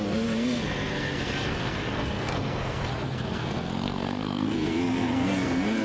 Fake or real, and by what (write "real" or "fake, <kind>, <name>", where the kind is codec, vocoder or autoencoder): fake, codec, SNAC